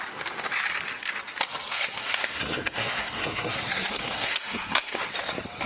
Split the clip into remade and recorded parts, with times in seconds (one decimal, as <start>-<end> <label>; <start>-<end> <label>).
0.0-1.7 recorded; 1.7-5.0 remade; 5.0-5.7 recorded